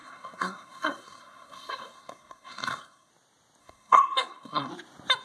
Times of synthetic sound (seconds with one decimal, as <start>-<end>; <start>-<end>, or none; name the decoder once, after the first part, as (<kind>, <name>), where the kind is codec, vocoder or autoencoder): 0.0-3.1 (codec, SNAC); 3.6-4.7